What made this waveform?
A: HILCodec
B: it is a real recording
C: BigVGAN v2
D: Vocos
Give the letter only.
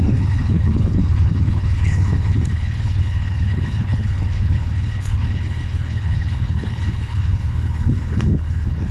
A